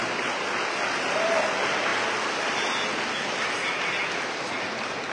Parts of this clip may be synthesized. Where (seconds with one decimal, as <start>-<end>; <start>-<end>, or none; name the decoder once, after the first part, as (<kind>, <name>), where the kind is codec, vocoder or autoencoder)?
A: none

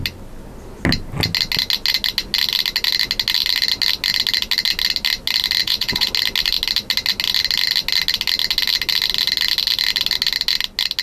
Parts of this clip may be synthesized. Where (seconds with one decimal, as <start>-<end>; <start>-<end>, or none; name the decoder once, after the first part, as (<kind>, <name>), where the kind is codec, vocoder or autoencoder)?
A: 5.6-6.1 (vocoder, Vocos)

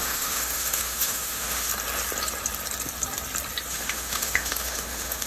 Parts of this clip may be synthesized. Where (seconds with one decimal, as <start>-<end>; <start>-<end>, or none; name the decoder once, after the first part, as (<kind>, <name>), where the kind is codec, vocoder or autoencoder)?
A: 0.0-1.7 (autoencoder, DAC-VAE); 3.7-5.3

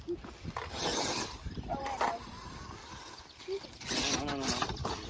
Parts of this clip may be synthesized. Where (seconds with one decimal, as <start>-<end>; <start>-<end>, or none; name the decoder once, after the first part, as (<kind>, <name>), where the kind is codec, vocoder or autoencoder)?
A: 0.9-1.8 (vocoder, BigVGAN v2)